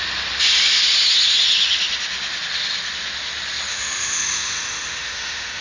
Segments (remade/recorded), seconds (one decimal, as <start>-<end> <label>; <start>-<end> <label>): 0.0-3.7 recorded; 3.7-5.6 remade